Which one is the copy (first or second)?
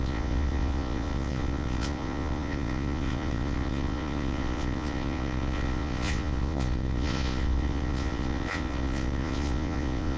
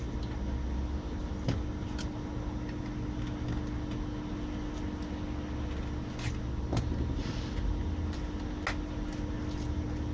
first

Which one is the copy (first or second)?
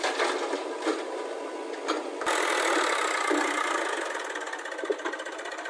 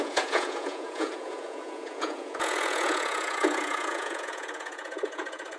second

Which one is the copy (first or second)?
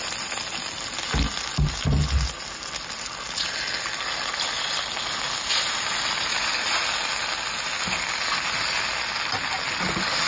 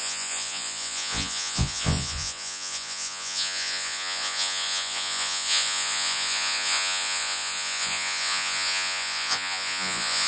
second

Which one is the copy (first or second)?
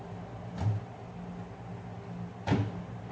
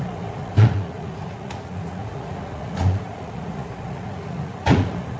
second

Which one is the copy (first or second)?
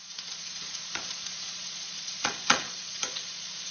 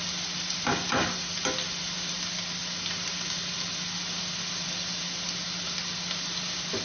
first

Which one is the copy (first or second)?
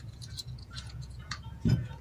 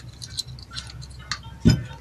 first